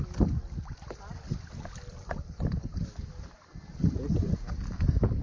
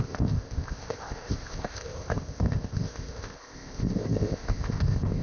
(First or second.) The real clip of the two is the first